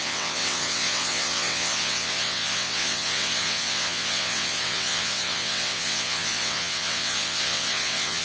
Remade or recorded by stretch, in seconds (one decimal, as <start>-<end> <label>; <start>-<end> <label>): 0.0-8.2 remade